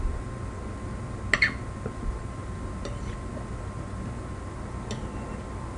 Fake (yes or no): no